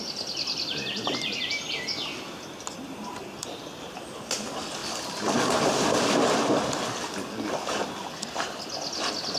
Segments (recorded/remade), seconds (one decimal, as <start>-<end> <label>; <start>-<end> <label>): 0.0-9.4 recorded